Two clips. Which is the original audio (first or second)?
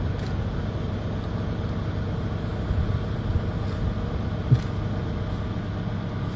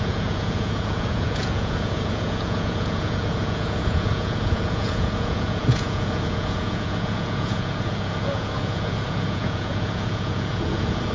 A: first